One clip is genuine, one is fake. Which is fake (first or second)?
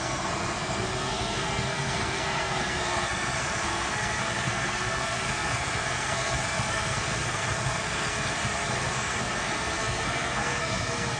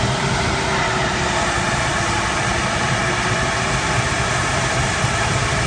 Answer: first